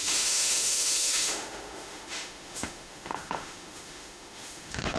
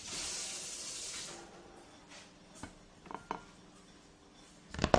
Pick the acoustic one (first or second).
second